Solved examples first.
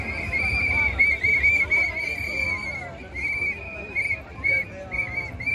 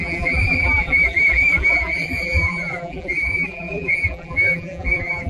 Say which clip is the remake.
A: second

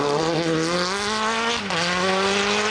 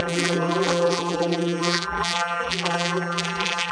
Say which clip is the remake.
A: second